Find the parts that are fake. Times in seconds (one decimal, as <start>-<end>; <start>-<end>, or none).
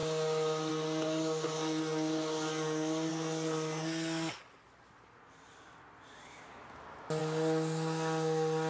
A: none